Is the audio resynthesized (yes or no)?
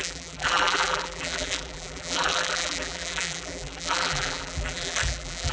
yes